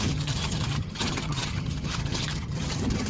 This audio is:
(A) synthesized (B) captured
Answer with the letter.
A